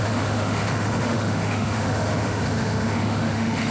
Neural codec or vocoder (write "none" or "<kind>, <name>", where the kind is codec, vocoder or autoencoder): autoencoder, DAC-VAE